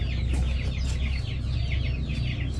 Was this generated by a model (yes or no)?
no